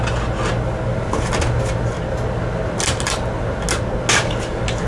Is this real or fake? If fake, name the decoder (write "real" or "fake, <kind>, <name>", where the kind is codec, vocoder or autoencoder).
real